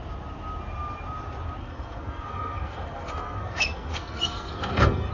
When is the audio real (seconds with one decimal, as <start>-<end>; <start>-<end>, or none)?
0.0-1.6